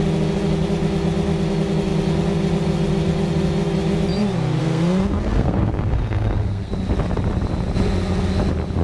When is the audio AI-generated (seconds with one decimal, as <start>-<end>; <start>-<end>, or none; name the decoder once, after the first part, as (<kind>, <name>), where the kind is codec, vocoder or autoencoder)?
4.6-6.7 (codec, SNAC)